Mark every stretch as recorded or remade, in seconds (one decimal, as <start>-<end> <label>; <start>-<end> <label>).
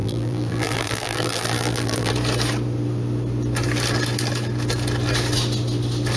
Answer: 0.0-2.1 remade; 2.1-6.2 recorded